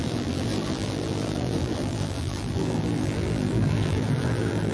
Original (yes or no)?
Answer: no